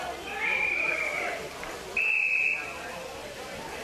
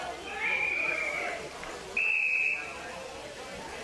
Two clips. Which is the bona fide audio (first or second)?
second